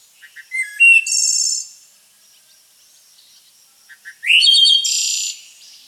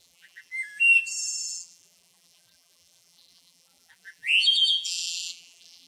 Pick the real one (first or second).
first